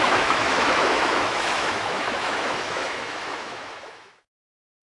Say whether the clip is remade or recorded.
remade